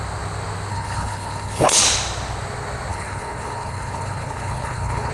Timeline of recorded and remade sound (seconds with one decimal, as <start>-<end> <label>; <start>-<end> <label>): 0.0-0.7 recorded; 0.7-1.8 remade; 1.8-2.9 recorded; 2.9-5.1 remade